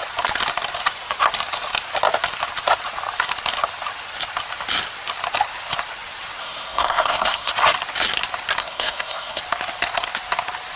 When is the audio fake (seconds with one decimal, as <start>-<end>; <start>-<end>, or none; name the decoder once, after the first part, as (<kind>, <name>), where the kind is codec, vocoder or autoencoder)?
6.4-7.5 (codec, SNAC); 8.6-9.4

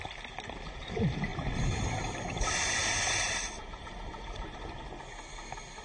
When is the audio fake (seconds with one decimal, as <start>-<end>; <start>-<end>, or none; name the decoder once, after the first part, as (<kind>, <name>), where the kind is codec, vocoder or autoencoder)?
1.3-4.8 (vocoder, BigVGAN v2)

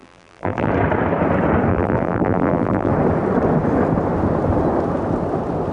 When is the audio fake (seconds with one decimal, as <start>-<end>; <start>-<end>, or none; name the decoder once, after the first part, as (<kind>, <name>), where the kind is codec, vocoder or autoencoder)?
0.0-0.7 (vocoder, BigVGAN v2); 1.7-2.9

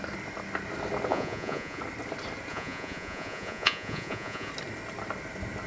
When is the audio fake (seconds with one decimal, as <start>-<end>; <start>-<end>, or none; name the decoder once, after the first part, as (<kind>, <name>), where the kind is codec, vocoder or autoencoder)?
1.1-1.8 (vocoder, Vocos); 2.5-4.5

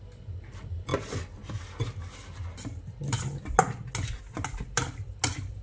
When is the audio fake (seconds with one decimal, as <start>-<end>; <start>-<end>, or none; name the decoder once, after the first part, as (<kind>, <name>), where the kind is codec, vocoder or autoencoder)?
none

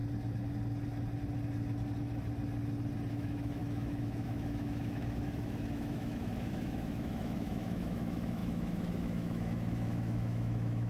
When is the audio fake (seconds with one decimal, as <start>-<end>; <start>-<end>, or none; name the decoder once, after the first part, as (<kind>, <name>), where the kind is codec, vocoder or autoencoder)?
3.1-10.9 (autoencoder, DAC-VAE)

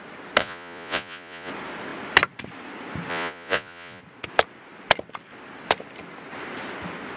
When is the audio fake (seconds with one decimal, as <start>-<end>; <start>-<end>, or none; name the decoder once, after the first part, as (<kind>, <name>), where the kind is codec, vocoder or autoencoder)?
0.4-1.5 (vocoder, Vocos); 3.1-4.0